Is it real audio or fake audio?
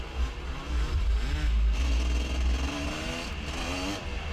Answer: real